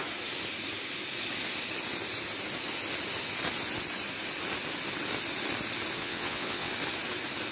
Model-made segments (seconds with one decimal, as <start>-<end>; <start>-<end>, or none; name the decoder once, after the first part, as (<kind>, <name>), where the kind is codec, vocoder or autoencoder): 6.0-6.7 (vocoder, WaveNeXt)